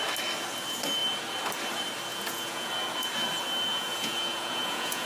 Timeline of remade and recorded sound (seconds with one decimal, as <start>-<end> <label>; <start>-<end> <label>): 0.0-2.1 recorded; 2.1-2.7 remade; 2.7-3.7 recorded; 3.7-5.1 remade